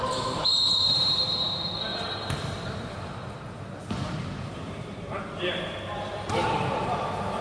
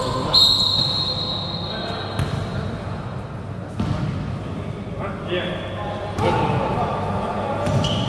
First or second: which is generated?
first